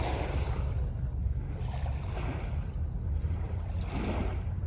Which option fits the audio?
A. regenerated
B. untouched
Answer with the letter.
B